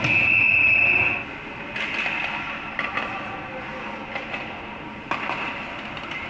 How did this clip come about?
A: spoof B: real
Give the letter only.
B